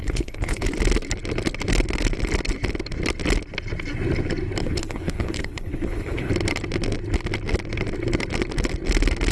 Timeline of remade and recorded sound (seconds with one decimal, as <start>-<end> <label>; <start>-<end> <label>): 0.0-0.6 remade; 0.6-4.6 recorded; 4.6-6.3 remade; 6.3-9.3 recorded